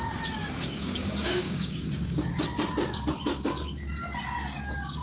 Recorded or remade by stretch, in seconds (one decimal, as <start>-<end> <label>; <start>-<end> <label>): 0.0-0.4 recorded; 0.4-2.2 remade; 2.2-5.0 recorded